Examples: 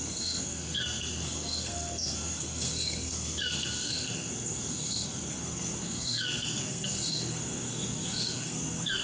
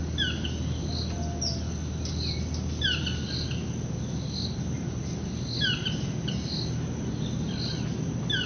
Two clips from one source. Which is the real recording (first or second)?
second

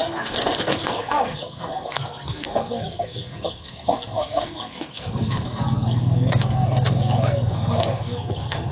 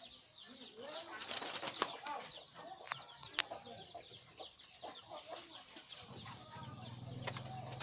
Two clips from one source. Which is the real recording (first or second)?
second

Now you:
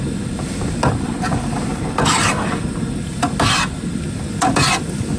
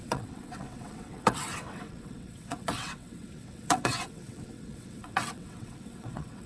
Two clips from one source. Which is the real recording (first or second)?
first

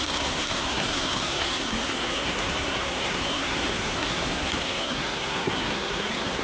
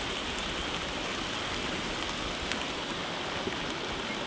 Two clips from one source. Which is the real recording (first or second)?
second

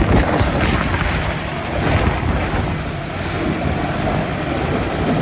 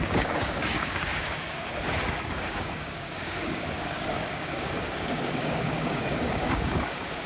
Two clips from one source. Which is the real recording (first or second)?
first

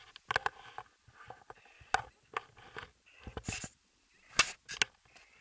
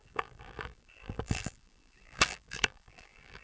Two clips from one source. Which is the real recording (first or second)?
first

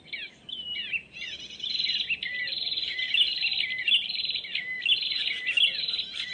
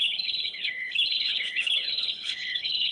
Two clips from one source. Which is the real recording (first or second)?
first